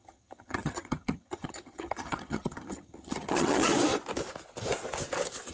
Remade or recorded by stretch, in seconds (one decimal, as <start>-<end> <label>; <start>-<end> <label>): 0.0-3.7 remade; 3.7-5.5 recorded

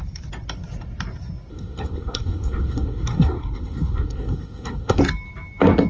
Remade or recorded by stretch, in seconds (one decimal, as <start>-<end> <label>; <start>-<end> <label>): 0.0-1.5 recorded; 1.5-5.0 remade; 5.0-5.9 recorded

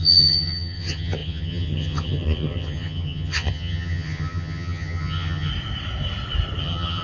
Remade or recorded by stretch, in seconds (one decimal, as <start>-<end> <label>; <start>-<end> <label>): 0.0-5.5 remade; 5.5-6.6 recorded; 6.6-7.0 remade